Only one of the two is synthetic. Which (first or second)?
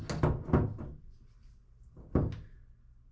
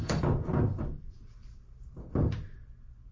second